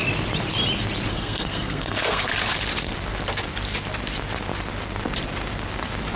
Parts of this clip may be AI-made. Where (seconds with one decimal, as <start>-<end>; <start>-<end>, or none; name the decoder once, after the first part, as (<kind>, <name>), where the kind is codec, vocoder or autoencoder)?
1.1-2.3 (codec, SNAC)